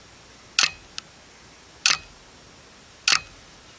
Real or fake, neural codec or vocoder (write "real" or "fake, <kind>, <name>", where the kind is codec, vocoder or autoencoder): real